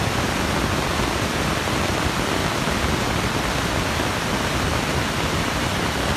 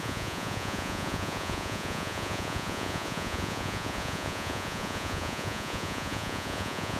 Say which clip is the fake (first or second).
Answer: second